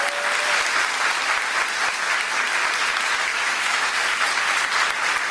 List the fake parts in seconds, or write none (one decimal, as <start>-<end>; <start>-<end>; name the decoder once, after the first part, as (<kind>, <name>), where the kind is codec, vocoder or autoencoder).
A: 3.3-3.9 (autoencoder, DAC-VAE)